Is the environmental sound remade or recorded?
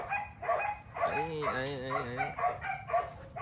recorded